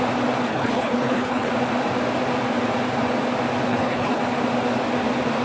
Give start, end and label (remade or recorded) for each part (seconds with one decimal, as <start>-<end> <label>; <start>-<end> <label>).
0.0-0.5 recorded; 0.5-1.5 remade; 1.5-3.7 recorded; 3.7-4.2 remade; 4.2-5.4 recorded